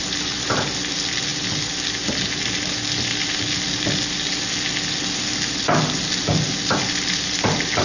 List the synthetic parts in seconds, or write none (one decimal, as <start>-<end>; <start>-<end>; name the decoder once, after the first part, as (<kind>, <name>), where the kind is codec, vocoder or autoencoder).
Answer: none